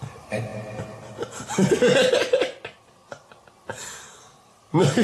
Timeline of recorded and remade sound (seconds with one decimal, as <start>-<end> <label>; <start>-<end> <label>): 0.0-5.0 recorded